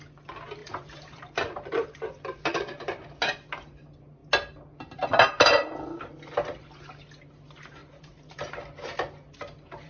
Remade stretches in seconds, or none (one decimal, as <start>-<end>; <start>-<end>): 0.6-2.1; 7.8-8.6